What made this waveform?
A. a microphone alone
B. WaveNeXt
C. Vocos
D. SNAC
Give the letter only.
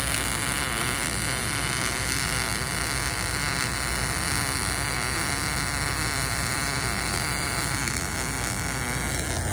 A